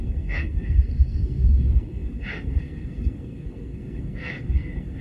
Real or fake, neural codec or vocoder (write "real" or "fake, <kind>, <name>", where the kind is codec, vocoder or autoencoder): fake, codec, SNAC